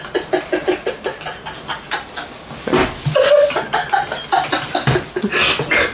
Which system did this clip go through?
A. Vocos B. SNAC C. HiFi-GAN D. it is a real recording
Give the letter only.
D